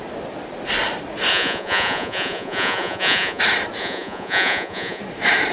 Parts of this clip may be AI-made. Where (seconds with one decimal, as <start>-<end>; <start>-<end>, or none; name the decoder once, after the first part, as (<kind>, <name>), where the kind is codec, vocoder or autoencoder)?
1.3-3.4 (vocoder, Vocos); 3.8-5.0